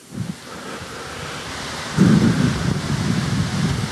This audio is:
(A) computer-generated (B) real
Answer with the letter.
B